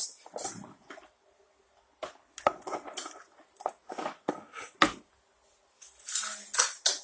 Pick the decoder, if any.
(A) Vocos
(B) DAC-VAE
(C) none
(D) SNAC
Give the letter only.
C